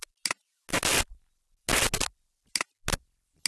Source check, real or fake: real